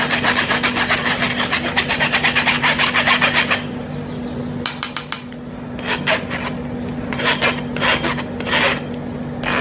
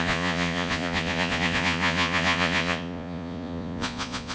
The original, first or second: first